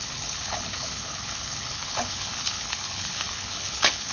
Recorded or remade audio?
remade